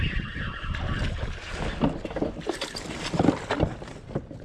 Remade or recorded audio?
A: recorded